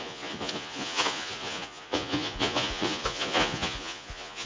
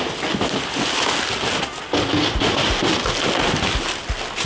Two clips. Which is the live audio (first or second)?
second